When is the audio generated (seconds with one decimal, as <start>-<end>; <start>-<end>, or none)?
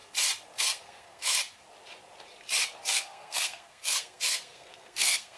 0.6-1.4; 2.8-5.4